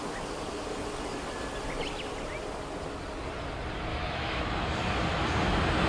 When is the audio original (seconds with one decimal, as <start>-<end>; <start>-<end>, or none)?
0.0-3.9; 4.4-5.9